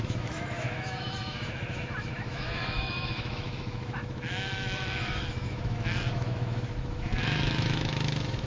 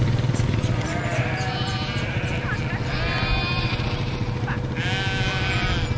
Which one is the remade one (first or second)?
first